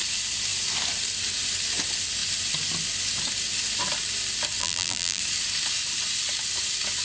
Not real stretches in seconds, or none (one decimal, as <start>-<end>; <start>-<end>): 4.6-5.2